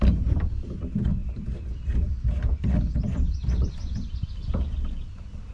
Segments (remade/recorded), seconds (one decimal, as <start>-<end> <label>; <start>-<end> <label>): 0.0-5.5 recorded